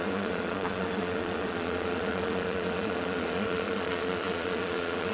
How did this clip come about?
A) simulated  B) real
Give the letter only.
A